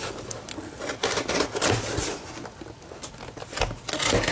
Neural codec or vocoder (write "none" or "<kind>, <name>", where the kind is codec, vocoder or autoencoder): none